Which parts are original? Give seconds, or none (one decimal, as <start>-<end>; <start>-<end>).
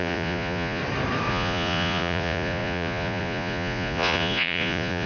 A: 0.8-1.3